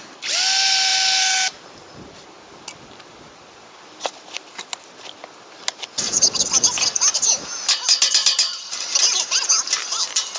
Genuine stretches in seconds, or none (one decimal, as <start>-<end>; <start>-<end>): 0.0-10.4